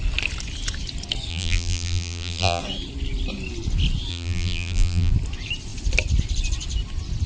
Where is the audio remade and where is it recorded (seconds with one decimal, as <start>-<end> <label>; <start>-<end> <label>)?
0.0-1.3 recorded; 1.3-2.6 remade; 2.6-4.1 recorded; 4.1-5.1 remade; 5.1-7.3 recorded